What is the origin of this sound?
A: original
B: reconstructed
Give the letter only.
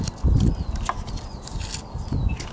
A